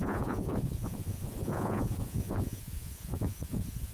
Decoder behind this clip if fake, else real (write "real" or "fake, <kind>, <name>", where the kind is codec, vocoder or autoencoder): fake, vocoder, Vocos